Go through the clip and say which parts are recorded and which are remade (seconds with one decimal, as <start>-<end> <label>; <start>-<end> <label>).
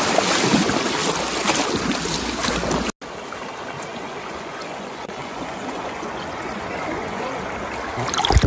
0.0-3.9 recorded; 3.9-7.4 remade; 7.4-8.5 recorded